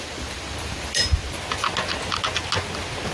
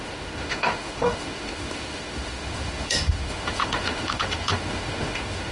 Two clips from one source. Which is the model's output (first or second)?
second